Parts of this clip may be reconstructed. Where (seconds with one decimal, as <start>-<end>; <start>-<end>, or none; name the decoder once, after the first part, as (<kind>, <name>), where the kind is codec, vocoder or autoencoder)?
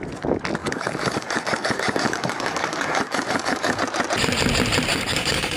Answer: 0.6-3.8 (codec, DAC); 4.9-5.6